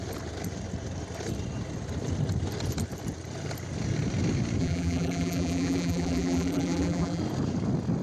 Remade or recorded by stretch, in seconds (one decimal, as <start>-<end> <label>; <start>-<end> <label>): 0.0-4.6 recorded; 4.6-7.2 remade; 7.2-8.0 recorded